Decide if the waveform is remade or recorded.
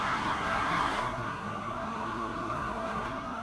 remade